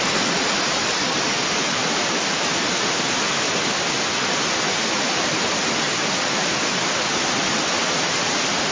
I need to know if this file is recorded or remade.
recorded